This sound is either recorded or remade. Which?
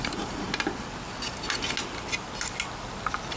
recorded